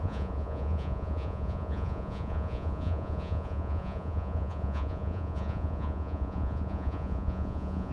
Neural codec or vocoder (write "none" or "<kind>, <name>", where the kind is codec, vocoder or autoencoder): vocoder, Vocos